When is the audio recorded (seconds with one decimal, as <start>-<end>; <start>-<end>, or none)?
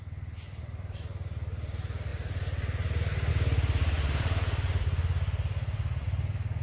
0.0-3.8